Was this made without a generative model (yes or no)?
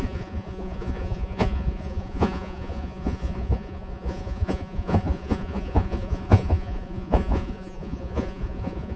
no